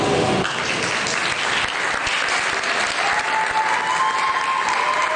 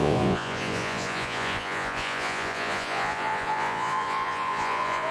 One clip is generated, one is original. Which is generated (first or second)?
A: second